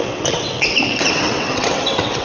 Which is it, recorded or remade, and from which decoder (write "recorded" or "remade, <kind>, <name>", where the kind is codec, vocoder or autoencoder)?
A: remade, vocoder, WaveNeXt